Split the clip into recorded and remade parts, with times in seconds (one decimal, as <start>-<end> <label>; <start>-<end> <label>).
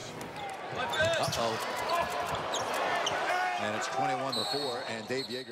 0.0-4.4 recorded; 4.4-4.9 remade; 4.9-5.5 recorded